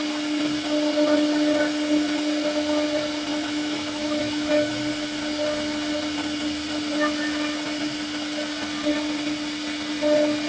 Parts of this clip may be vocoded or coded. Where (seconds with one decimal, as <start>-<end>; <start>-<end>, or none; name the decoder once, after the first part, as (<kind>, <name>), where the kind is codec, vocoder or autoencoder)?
3.3-4.7 (autoencoder, DAC-VAE)